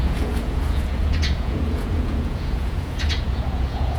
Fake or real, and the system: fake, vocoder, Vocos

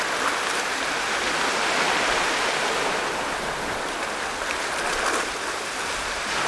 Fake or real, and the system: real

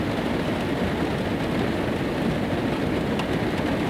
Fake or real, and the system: real